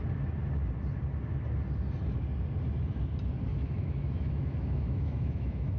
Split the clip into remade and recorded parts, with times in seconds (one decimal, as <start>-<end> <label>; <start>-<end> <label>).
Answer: 0.0-3.5 recorded; 3.5-5.8 remade